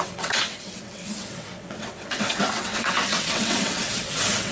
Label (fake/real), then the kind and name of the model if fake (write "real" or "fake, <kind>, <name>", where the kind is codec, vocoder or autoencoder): fake, vocoder, WaveNeXt